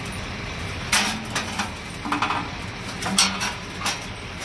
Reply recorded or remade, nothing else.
recorded